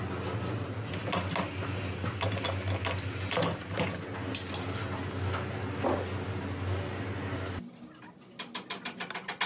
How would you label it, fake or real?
real